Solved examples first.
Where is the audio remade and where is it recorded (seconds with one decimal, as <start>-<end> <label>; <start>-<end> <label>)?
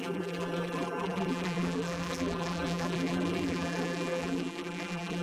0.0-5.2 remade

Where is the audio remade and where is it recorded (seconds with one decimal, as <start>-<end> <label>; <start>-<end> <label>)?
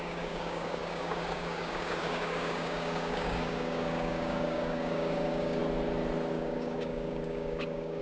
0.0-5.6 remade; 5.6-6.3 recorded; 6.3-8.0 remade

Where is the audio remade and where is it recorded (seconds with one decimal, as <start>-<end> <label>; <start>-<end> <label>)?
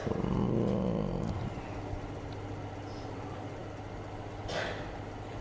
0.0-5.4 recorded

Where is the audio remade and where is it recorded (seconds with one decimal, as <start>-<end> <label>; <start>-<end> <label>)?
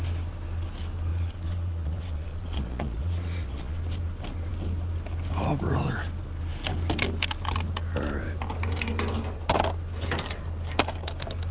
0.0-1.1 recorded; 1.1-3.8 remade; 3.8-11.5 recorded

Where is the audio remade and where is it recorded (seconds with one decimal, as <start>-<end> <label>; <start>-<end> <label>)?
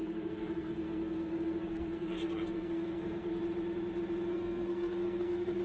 0.0-3.4 remade; 3.4-4.3 recorded; 4.3-5.6 remade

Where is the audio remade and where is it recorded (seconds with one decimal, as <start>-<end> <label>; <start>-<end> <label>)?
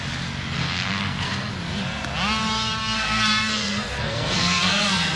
0.0-0.6 recorded; 0.6-1.5 remade; 1.5-2.8 recorded; 2.8-5.2 remade